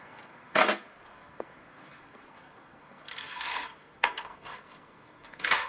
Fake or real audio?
fake